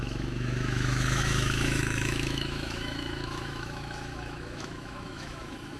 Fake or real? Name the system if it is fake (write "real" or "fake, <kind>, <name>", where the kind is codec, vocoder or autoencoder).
fake, autoencoder, DAC-VAE